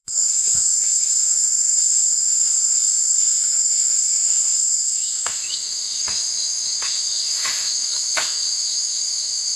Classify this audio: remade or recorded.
remade